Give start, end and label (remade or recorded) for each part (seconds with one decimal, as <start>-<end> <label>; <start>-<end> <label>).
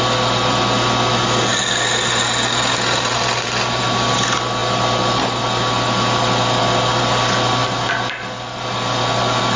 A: 0.0-9.6 recorded